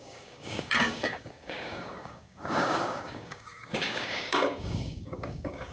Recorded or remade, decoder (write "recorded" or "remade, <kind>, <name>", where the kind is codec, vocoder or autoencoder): remade, codec, DAC